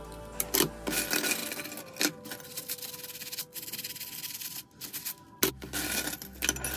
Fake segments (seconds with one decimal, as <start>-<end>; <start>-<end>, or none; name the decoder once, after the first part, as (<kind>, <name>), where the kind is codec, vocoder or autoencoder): none